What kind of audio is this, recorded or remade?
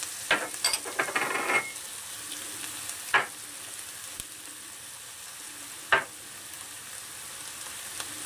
recorded